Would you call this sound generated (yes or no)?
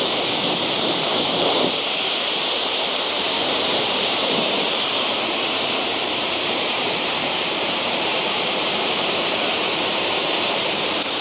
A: yes